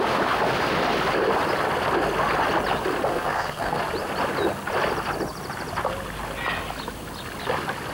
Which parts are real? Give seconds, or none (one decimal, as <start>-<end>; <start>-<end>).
0.0-3.1; 3.8-7.9

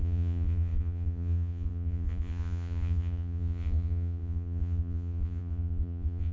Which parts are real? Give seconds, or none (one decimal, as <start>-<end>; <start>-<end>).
none

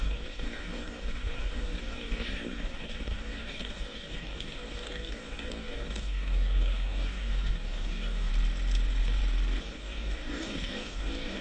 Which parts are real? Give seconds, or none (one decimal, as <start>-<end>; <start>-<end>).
8.3-9.6

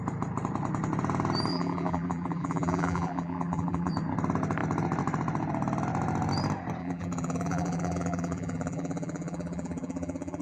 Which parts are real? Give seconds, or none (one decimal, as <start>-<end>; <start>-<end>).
0.0-1.5; 3.9-6.8

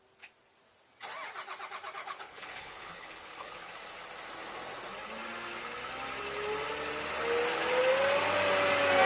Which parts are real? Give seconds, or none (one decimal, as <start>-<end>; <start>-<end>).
0.0-2.0; 3.7-9.1

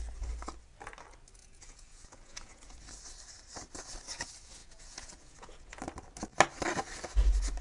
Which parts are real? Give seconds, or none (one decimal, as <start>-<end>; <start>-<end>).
0.0-1.4; 2.8-4.6; 5.8-7.6

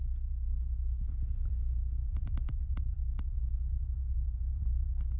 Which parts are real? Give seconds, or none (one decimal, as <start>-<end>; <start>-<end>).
0.0-2.0